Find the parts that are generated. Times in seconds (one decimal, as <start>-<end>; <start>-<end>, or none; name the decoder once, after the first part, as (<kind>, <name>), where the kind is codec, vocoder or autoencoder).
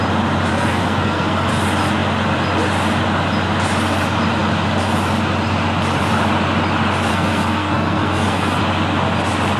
0.5-1.5 (codec, SNAC); 7.1-8.6